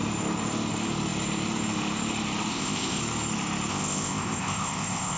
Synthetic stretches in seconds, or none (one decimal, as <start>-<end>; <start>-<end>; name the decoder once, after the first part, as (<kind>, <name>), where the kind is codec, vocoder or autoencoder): 2.5-3.0 (codec, ZipCodec); 3.7-5.2